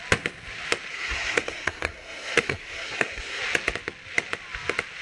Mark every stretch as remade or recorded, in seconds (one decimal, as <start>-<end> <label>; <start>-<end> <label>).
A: 0.0-0.9 recorded; 0.9-3.4 remade; 3.4-5.0 recorded

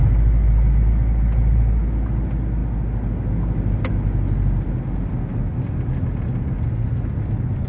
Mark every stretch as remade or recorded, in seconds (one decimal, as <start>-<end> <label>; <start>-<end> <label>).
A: 0.0-7.7 recorded

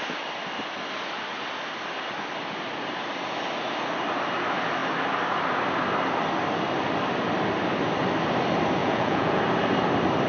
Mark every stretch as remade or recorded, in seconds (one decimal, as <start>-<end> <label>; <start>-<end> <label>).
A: 0.0-8.8 recorded; 8.8-9.4 remade; 9.4-10.3 recorded

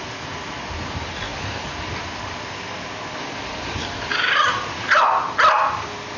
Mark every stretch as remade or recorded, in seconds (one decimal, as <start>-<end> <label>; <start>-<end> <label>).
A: 0.0-6.2 recorded

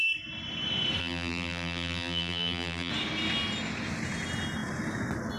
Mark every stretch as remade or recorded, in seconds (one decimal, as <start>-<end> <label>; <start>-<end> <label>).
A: 0.0-1.0 recorded; 1.0-2.9 remade; 2.9-5.4 recorded

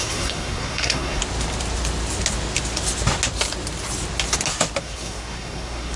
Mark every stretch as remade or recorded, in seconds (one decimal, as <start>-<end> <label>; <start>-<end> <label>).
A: 0.0-1.2 remade; 1.2-4.8 recorded; 4.8-6.0 remade

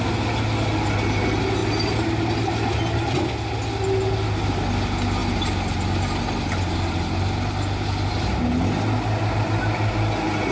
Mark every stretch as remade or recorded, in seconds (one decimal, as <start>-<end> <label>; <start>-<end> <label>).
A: 0.0-10.5 recorded